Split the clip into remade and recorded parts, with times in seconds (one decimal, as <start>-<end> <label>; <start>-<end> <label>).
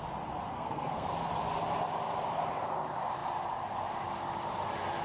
0.0-0.5 recorded; 0.5-1.1 remade; 1.1-5.0 recorded